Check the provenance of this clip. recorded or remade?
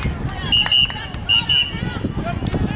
recorded